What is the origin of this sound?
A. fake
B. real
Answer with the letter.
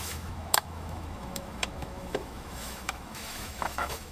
A